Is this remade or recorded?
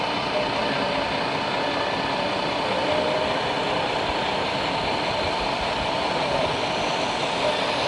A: recorded